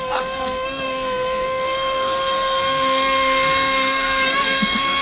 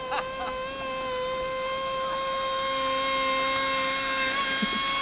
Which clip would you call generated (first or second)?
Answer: first